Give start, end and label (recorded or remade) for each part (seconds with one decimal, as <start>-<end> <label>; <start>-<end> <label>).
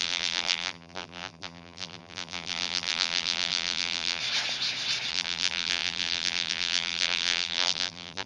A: 0.0-4.2 remade; 4.2-5.1 recorded; 5.1-8.3 remade